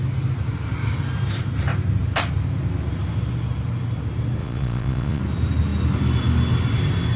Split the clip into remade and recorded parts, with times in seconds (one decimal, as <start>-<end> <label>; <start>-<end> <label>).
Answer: 0.0-4.4 recorded; 4.4-5.2 remade; 5.2-7.2 recorded